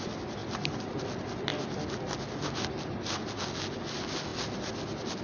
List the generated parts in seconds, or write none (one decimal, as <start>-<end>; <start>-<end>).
0.4-1.0